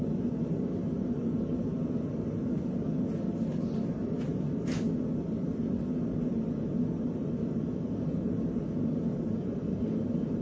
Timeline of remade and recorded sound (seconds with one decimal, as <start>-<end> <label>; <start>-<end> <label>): 0.0-10.4 recorded